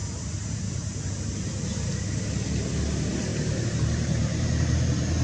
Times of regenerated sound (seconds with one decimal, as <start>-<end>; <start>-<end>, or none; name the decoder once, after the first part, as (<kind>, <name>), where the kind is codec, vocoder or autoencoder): 0.0-1.0 (vocoder, BigVGAN v2); 3.3-4.6